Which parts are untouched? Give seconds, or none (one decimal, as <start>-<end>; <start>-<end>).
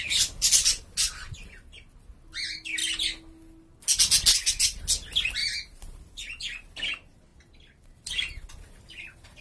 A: 0.0-5.4; 6.4-9.4